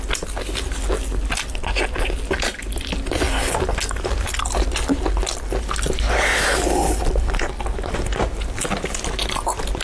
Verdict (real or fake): real